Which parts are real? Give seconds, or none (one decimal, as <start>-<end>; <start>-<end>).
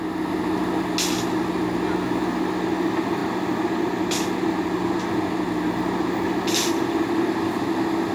0.0-8.1